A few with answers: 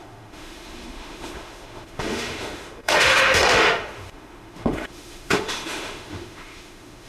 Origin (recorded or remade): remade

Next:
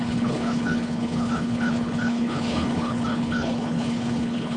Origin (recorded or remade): remade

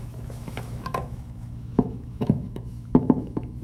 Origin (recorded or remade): remade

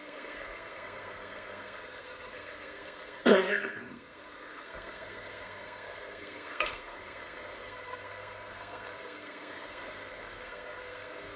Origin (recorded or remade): remade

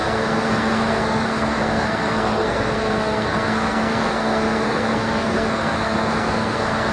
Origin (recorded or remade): remade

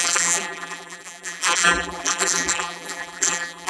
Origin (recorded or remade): remade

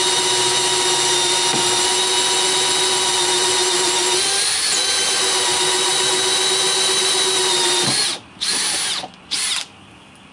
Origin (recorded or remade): recorded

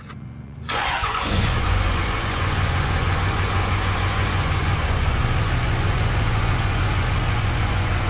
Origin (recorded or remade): remade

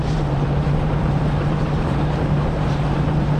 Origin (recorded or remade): remade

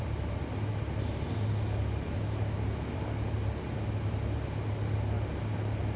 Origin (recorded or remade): recorded